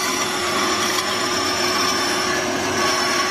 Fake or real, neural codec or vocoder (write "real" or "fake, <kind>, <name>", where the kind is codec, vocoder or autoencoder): fake, vocoder, Vocos